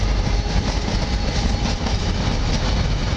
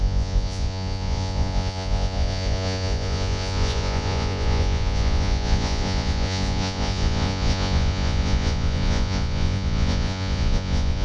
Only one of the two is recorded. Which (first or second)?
first